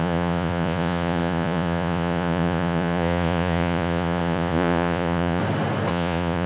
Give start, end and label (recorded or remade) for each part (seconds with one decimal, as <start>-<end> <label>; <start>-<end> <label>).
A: 0.0-5.4 remade; 5.4-5.9 recorded; 5.9-6.5 remade